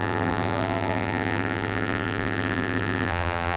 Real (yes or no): no